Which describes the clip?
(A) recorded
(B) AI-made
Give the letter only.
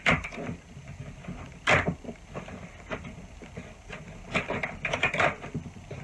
A